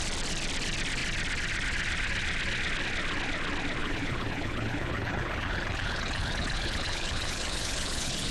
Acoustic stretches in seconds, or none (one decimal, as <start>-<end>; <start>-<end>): 0.0-3.8